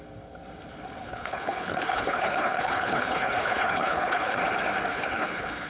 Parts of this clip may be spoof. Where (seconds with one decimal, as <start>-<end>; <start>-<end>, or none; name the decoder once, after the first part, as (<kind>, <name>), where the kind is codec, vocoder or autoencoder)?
1.0-4.4 (codec, HILCodec); 4.9-5.7